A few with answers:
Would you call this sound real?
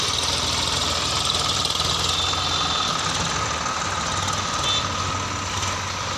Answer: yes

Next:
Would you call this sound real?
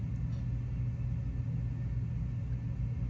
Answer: yes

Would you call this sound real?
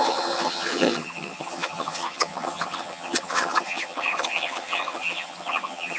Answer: no